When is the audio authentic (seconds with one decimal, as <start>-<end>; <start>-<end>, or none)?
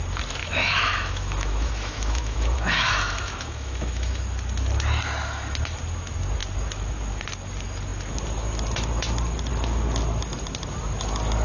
0.0-0.4; 4.2-11.4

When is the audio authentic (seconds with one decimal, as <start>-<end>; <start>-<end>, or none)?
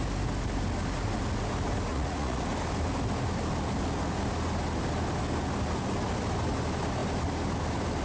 0.0-1.9; 2.4-8.0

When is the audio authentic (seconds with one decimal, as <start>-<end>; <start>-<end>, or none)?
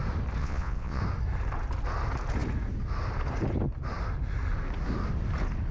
0.0-0.4; 1.0-5.7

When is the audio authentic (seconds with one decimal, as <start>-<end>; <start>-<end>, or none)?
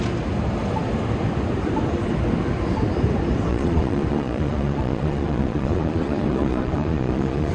0.0-3.5